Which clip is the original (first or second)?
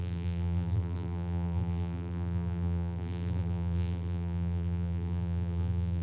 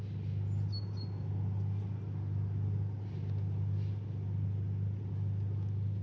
second